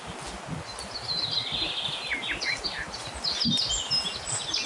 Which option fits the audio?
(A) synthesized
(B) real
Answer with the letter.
B